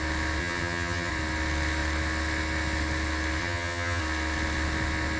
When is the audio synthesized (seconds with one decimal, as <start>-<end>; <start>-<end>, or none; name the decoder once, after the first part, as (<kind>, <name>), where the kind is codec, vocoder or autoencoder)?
0.4-1.1 (vocoder, HiFi-GAN); 3.4-4.0

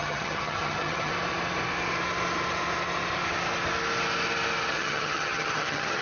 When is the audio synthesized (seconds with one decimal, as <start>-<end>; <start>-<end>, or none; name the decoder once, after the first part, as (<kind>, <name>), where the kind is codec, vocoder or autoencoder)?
0.0-1.1 (vocoder, HiFi-GAN); 4.7-6.0